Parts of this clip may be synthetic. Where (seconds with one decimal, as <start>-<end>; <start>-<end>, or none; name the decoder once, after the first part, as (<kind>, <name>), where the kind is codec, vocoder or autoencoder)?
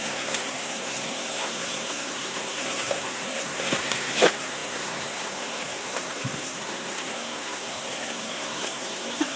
0.0-9.4 (codec, SNAC)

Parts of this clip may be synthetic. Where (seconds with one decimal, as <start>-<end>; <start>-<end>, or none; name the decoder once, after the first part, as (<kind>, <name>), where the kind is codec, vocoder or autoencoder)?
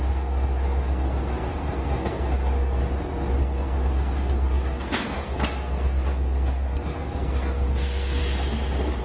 0.0-2.8 (codec, SNAC); 3.4-8.2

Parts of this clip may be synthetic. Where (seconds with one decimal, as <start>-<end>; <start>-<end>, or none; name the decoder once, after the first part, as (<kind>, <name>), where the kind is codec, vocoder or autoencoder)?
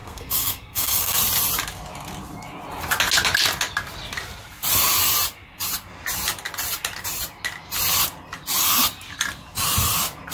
0.0-1.2 (codec, SNAC)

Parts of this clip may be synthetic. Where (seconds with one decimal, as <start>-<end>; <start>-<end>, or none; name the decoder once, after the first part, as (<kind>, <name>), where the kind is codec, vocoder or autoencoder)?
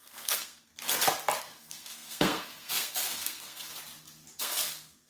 0.0-0.7 (codec, SNAC); 1.4-3.7; 4.4-5.1